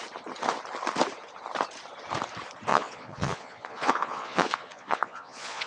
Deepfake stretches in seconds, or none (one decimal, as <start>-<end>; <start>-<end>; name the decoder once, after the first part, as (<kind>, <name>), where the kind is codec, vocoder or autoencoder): 2.7-5.7 (vocoder, Vocos)